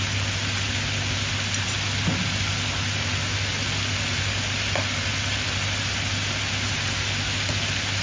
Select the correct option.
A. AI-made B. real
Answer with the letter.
B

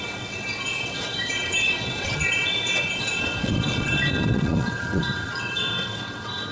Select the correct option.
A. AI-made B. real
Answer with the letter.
A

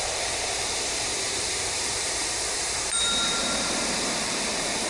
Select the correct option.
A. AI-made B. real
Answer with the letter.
A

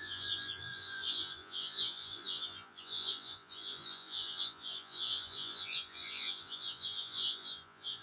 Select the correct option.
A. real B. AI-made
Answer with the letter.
B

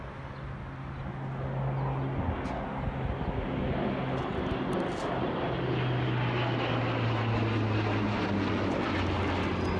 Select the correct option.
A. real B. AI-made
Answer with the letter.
A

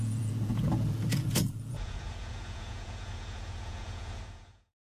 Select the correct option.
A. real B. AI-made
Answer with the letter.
B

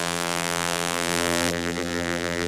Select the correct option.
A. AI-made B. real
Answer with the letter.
A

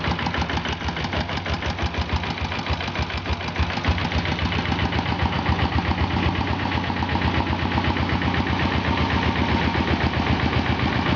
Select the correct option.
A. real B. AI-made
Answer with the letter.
A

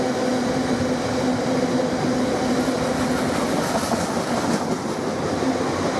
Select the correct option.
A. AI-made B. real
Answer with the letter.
B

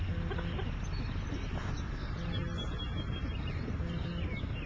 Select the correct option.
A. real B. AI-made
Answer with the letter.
A